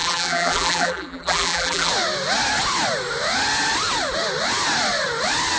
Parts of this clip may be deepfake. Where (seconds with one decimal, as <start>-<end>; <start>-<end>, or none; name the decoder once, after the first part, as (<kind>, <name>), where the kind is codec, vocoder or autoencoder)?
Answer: 0.0-1.9 (vocoder, BigVGAN v2)